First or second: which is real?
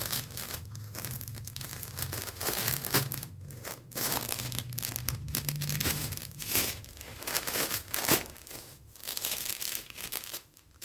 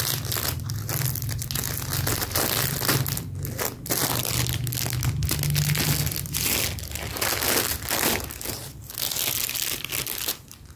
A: second